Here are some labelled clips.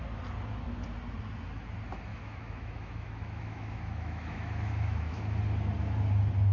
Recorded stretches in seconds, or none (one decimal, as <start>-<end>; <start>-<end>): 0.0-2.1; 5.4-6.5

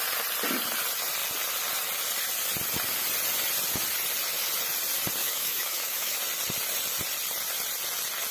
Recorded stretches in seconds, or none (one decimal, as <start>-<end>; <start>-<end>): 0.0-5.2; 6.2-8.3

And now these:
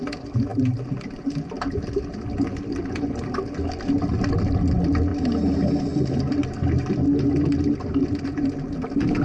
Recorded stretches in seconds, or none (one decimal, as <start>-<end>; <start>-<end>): 0.0-9.2

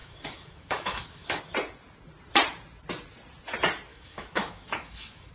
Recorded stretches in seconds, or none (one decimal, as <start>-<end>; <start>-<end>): 1.4-3.9

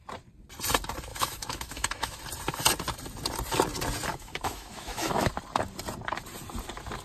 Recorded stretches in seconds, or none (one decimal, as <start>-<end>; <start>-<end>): 0.0-1.1; 2.2-4.1; 5.3-7.0